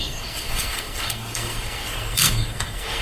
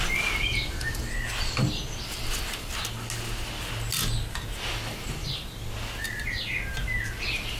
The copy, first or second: first